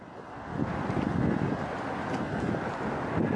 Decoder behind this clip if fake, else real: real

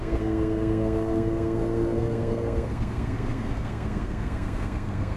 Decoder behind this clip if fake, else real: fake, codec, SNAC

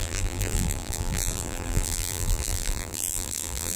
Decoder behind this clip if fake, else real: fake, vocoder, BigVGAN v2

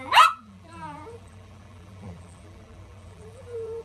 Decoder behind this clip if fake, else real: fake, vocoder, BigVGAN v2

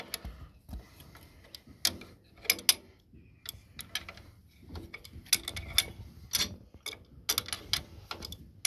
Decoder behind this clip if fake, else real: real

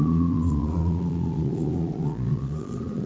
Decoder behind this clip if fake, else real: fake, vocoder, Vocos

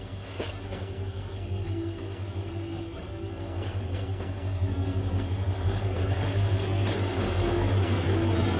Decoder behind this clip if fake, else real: fake, codec, SNAC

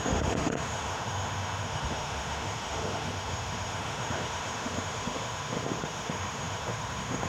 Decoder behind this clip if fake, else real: fake, autoencoder, DAC-VAE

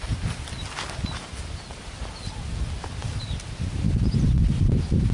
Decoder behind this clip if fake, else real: real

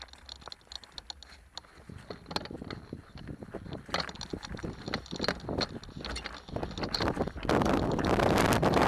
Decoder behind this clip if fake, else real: real